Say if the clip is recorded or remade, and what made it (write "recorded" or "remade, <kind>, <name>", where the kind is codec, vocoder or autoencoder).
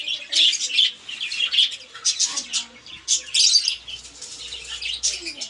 recorded